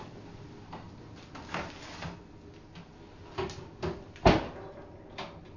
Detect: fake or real real